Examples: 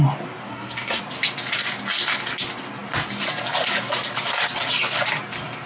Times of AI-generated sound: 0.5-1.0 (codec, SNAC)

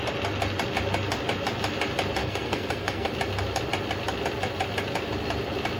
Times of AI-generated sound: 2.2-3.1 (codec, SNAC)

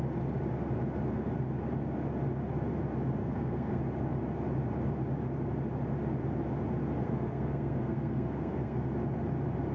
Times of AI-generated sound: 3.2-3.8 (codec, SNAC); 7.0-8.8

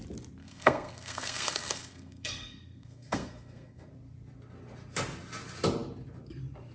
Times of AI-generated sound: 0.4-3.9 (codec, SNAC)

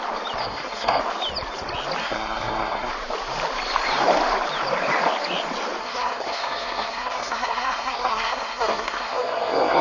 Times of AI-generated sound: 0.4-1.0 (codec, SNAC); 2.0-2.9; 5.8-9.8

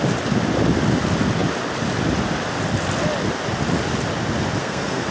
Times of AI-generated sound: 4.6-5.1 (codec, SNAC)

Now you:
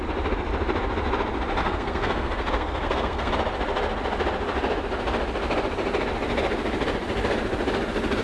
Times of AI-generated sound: 1.6-3.3 (codec, SNAC)